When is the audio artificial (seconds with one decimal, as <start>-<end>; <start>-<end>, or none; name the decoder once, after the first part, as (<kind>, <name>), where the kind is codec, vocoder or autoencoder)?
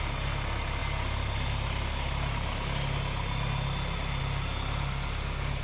none